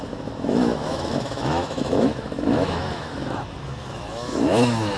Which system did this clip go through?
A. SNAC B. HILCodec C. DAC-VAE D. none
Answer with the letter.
C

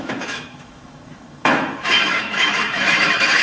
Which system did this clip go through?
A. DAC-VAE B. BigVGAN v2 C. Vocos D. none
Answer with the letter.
A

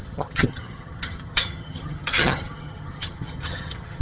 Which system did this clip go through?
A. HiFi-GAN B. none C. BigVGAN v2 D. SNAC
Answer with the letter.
A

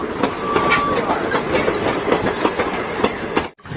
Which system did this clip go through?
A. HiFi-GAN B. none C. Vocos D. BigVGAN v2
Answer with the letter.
B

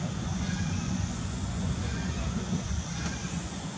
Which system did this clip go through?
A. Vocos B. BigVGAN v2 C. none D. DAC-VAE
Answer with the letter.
A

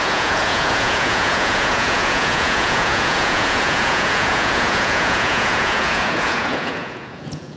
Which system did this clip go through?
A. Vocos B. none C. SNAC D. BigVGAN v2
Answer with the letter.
A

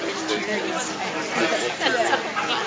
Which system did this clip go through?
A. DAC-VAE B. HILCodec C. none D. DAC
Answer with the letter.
C